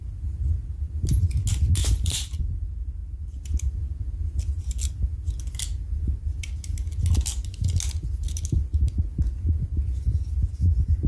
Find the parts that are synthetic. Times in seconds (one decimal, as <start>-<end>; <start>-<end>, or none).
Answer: 1.8-2.4